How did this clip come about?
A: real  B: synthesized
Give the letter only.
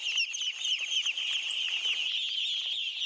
A